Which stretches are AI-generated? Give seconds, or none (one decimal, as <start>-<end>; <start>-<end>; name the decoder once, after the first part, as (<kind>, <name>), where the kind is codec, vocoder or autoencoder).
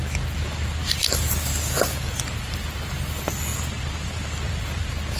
3.5-4.3 (vocoder, BigVGAN v2)